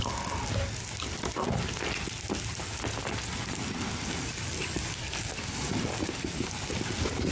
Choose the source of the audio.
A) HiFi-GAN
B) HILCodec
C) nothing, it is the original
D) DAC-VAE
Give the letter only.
C